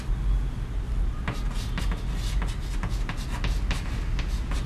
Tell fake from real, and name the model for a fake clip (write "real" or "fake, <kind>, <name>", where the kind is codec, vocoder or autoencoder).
real